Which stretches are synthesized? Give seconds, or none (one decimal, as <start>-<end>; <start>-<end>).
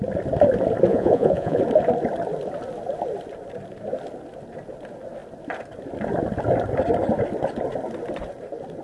0.9-1.6